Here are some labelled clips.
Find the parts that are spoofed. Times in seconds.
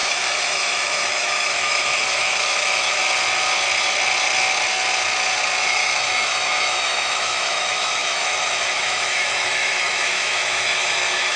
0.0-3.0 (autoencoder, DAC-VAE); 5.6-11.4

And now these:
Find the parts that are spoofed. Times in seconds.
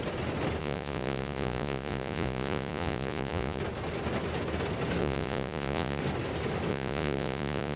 0.6-3.6 (vocoder, Vocos); 5.0-6.0; 6.7-7.8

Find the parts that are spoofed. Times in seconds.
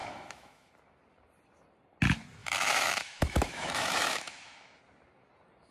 0.0-0.7 (autoencoder, DAC-VAE); 2.4-4.8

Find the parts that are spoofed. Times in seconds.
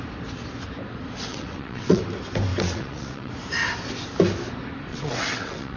1.3-2.0 (vocoder, WaveNeXt); 2.5-3.3; 4.9-5.8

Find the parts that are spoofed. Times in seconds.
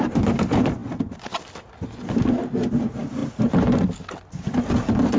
none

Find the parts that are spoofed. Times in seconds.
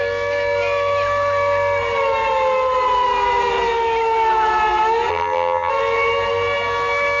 5.1-5.7 (vocoder, HiFi-GAN)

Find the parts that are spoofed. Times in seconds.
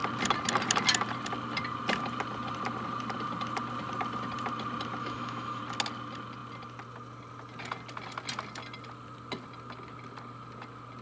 5.0-5.6 (autoencoder, DAC-VAE)